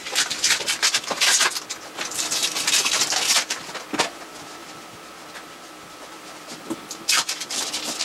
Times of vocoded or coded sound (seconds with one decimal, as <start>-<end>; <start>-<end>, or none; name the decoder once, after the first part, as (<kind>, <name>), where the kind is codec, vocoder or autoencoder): 0.0-1.0 (vocoder, BigVGAN v2); 2.4-2.9; 4.6-8.0